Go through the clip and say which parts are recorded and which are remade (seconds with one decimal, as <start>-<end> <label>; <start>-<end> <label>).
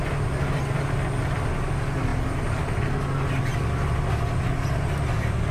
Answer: 0.0-5.5 recorded